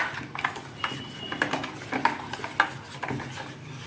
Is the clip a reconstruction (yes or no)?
no